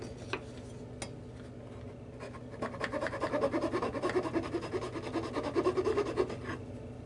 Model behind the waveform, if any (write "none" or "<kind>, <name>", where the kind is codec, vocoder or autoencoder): none